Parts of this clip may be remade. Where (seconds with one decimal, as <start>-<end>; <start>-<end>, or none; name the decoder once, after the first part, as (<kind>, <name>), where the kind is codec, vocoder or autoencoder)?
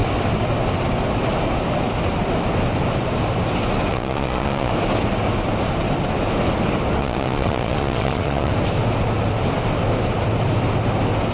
3.9-4.7 (vocoder, Vocos); 7.0-8.5